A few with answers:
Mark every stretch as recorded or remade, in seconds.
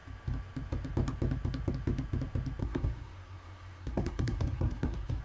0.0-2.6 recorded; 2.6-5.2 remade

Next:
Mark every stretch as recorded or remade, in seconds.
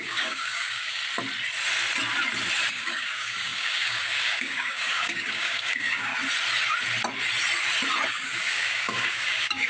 0.0-1.0 remade; 1.0-2.7 recorded; 2.7-6.1 remade; 6.1-8.1 recorded; 8.1-9.7 remade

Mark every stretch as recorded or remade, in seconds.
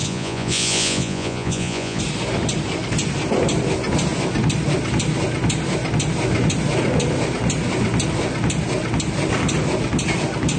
0.0-2.0 remade; 2.0-10.6 recorded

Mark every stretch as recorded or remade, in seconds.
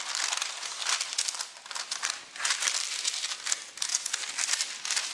0.0-5.1 recorded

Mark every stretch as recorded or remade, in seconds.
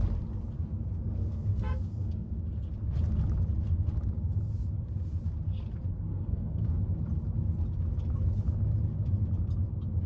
0.0-1.1 recorded; 1.1-2.4 remade; 2.4-6.1 recorded; 6.1-6.7 remade; 6.7-10.1 recorded